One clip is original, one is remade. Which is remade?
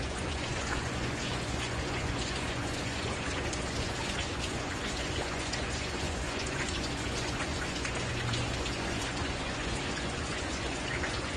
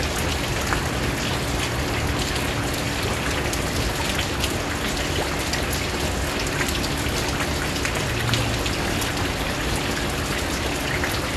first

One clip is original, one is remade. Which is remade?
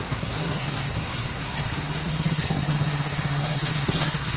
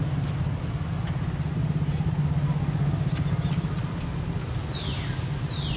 first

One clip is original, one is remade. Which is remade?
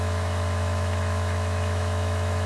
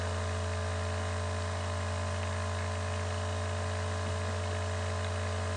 first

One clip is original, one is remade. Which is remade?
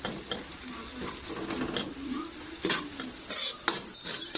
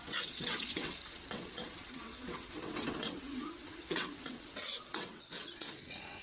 second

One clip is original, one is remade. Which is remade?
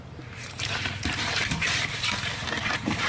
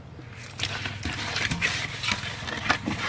first